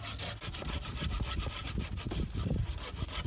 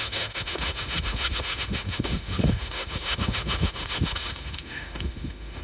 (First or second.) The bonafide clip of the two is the first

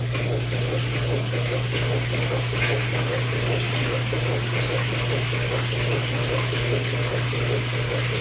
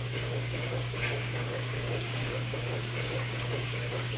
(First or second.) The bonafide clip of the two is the first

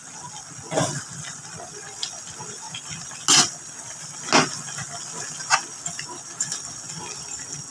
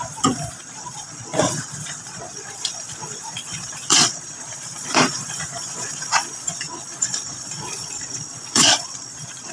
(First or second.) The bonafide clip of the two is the first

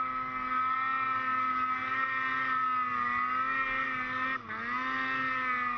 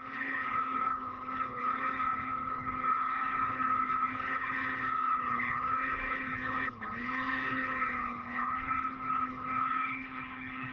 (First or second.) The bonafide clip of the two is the first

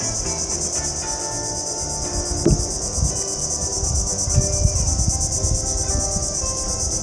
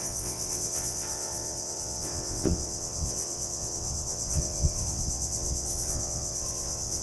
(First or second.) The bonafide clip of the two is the first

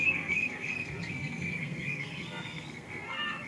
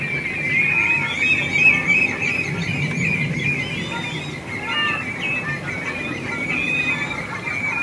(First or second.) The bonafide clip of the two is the second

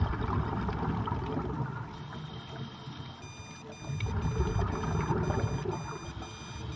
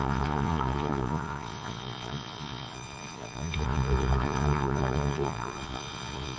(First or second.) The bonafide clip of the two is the first